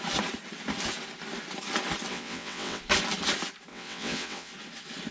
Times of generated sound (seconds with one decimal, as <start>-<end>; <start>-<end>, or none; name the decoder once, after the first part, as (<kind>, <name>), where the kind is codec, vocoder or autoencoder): 2.1-2.8 (vocoder, WaveNeXt); 3.7-4.5